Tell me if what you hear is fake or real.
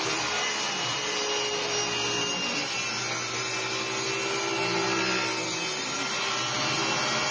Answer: real